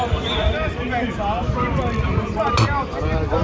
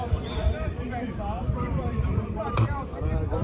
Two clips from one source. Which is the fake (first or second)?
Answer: second